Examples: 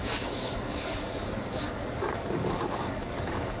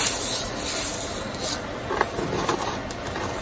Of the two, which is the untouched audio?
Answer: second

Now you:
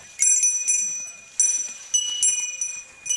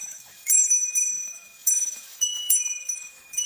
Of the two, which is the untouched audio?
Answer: first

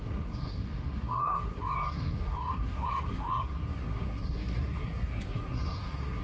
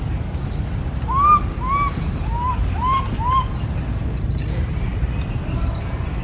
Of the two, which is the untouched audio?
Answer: second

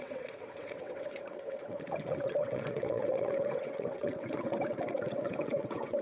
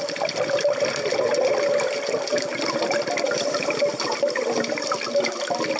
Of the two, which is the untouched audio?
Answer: second